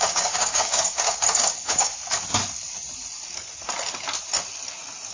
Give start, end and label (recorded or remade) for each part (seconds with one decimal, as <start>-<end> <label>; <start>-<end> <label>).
0.0-1.9 remade; 1.9-5.1 recorded